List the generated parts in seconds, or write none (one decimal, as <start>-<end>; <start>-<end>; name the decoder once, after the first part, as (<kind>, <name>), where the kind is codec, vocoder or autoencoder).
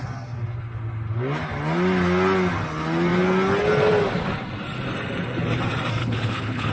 6.0-6.7 (codec, HILCodec)